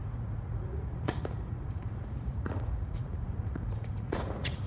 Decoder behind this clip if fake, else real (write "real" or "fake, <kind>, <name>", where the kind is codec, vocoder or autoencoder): fake, vocoder, Vocos